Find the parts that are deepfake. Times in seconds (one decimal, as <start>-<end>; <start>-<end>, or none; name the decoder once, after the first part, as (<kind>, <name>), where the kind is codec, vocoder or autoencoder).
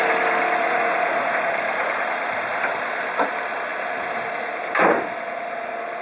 0.6-1.5 (vocoder, Vocos)